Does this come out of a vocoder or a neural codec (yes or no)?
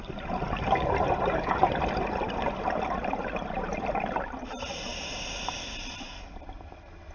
no